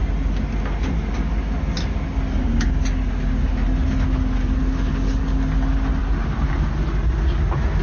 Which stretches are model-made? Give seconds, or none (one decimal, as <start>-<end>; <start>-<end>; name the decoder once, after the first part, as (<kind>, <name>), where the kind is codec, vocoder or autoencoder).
none